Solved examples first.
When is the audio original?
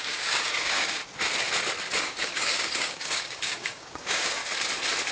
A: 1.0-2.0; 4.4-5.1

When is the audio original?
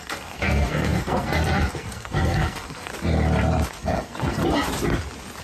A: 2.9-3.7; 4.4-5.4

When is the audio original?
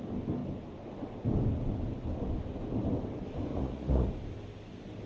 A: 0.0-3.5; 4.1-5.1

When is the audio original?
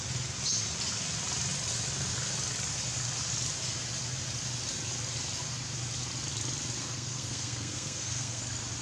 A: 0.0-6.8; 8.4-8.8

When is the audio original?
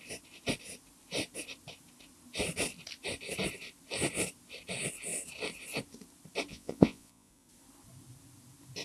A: 0.0-6.5; 7.3-8.8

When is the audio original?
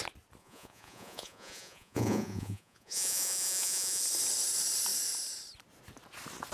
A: 0.0-0.4; 4.0-6.5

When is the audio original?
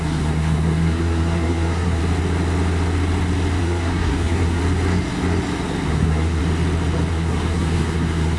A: 2.0-3.6; 4.6-5.9; 6.4-7.1